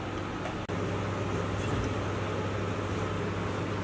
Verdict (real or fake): real